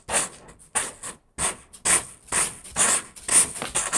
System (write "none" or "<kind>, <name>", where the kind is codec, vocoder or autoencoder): none